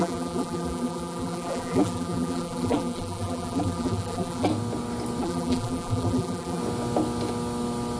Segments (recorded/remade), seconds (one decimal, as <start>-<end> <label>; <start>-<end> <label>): 0.0-4.5 remade; 4.5-5.2 recorded; 5.2-6.6 remade; 6.6-8.0 recorded